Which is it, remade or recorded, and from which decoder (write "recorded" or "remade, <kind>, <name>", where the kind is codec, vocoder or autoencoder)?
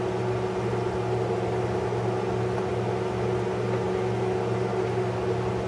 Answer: recorded